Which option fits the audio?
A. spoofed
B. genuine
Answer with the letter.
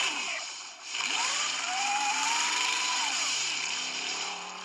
A